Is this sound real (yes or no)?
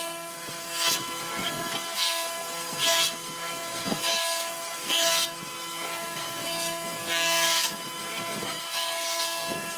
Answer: no